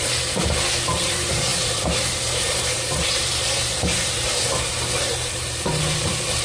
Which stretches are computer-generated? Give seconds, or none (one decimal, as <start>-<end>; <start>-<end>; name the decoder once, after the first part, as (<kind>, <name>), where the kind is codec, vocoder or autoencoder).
0.0-6.4 (vocoder, BigVGAN v2)